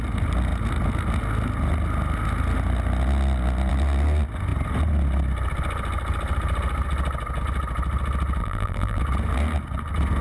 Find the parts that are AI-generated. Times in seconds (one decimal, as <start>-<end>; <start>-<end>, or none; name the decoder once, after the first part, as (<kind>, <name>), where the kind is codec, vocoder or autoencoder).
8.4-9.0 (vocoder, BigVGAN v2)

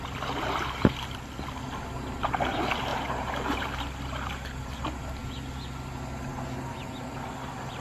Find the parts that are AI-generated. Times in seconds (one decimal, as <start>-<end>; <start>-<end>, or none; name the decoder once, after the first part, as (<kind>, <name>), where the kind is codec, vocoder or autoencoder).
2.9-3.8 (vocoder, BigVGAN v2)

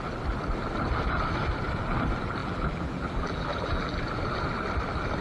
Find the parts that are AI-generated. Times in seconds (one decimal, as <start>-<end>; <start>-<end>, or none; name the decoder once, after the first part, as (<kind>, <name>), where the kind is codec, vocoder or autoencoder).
2.4-4.0 (vocoder, BigVGAN v2)

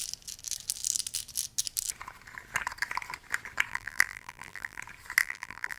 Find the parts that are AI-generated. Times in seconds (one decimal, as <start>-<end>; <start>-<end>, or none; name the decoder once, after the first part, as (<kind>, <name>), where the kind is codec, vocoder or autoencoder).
3.7-4.8 (vocoder, BigVGAN v2); 5.2-5.8

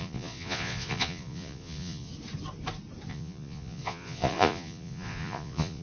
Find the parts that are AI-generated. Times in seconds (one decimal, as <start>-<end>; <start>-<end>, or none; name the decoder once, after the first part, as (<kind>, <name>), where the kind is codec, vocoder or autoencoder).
0.0-2.1 (vocoder, Vocos); 3.1-5.8

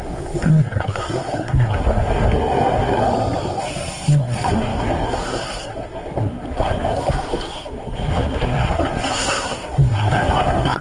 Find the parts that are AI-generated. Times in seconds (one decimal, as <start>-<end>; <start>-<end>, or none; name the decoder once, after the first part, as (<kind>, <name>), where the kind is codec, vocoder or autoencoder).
0.0-3.1 (codec, SNAC); 3.6-10.8

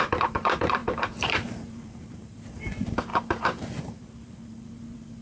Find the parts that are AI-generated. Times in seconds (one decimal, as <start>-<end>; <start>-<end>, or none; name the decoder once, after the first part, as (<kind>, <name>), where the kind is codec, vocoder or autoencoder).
0.0-5.2 (vocoder, BigVGAN v2)

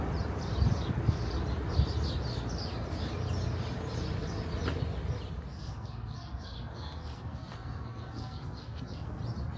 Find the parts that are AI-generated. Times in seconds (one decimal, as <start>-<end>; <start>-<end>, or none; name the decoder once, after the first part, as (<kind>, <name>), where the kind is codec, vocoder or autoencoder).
5.5-9.2 (codec, SNAC)